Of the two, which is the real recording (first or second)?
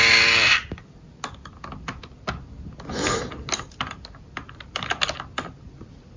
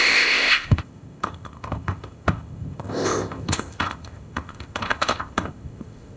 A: first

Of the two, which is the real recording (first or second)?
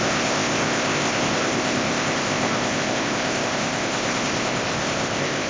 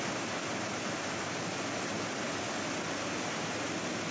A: second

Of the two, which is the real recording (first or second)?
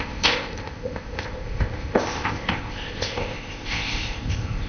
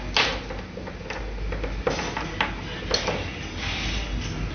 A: second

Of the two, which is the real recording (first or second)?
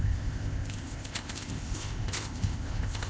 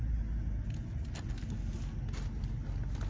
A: second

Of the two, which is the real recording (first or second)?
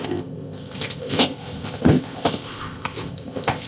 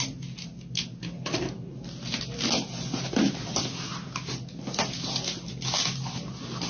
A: second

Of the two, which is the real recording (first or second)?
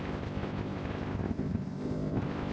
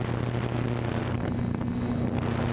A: second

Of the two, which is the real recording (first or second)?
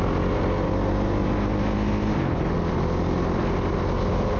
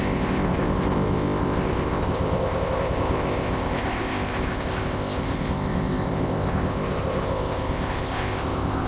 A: first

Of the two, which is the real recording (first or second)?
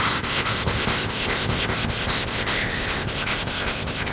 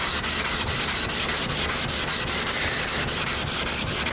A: second